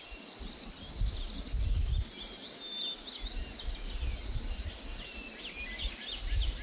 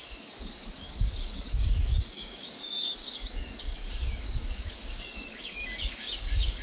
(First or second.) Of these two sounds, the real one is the first